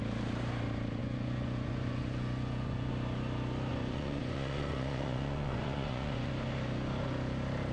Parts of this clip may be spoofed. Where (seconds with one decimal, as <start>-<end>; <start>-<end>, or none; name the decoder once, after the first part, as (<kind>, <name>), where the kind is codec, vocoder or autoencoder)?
1.0-2.9 (vocoder, Vocos); 3.7-6.3